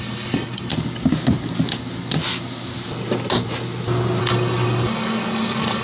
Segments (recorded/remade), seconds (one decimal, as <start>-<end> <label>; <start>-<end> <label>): 0.0-0.7 remade; 0.7-4.2 recorded; 4.2-5.8 remade

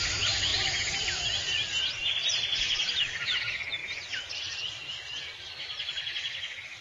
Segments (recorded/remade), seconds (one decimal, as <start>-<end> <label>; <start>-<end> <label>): 0.0-2.0 recorded; 2.0-3.0 remade; 3.0-6.8 recorded

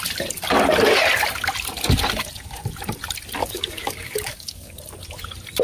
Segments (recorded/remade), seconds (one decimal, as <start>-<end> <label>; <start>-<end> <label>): 0.0-3.4 recorded; 3.4-4.8 remade; 4.8-5.6 recorded

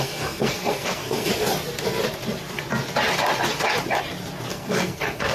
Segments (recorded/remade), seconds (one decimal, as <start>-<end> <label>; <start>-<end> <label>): 0.0-1.3 remade; 1.3-4.5 recorded; 4.5-5.3 remade

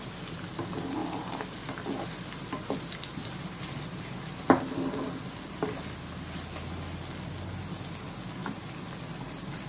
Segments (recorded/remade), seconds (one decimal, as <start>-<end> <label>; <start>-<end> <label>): 0.0-9.7 recorded

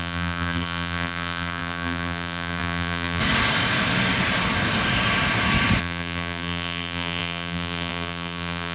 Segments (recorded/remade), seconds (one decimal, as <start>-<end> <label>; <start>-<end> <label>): 0.0-3.2 remade; 3.2-5.8 recorded; 5.8-8.7 remade